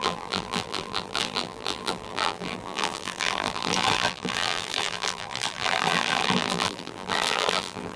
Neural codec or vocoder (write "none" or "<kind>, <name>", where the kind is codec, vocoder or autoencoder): vocoder, BigVGAN v2